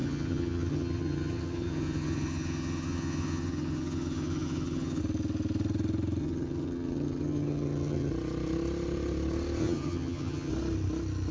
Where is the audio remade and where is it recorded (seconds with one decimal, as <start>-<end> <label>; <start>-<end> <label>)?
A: 0.0-5.0 remade; 5.0-6.2 recorded; 6.2-8.1 remade; 8.1-9.6 recorded; 9.6-10.5 remade; 10.5-11.3 recorded